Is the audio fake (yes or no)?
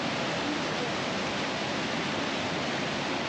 no